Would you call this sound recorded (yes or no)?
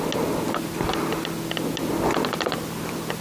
yes